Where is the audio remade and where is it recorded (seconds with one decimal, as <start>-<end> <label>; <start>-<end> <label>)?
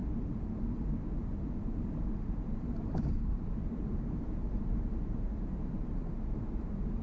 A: 0.0-7.0 remade